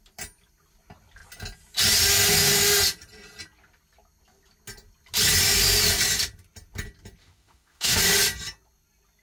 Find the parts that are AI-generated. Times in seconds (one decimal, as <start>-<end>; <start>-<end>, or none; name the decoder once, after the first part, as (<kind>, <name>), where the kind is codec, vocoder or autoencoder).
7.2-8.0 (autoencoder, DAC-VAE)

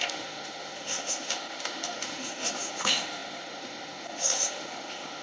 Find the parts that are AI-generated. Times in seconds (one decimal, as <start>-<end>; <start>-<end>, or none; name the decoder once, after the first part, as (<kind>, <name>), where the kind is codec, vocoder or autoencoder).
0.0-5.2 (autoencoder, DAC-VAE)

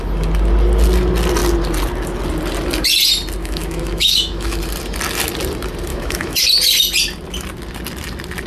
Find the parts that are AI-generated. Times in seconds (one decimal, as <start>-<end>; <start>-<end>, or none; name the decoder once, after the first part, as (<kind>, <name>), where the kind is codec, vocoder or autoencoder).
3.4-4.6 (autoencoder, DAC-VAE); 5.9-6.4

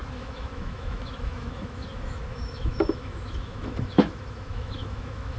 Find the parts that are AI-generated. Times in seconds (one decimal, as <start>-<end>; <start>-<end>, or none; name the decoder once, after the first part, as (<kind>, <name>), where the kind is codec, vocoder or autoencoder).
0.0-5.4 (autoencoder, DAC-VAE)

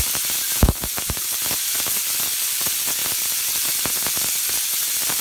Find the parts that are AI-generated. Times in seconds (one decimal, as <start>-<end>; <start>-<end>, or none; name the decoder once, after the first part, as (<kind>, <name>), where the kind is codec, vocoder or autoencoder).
none

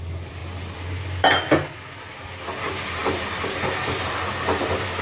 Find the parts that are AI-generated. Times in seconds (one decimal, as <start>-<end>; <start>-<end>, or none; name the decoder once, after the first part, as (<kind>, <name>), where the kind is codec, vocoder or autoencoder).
none